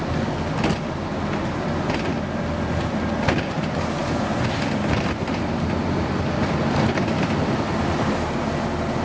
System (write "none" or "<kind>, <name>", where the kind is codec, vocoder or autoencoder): none